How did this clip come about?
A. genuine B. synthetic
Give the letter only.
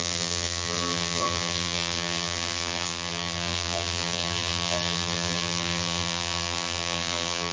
B